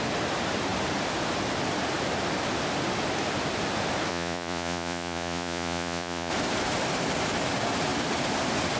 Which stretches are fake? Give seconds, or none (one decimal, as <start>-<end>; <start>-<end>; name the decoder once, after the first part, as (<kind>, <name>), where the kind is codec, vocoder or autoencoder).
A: 4.1-6.3 (vocoder, Vocos)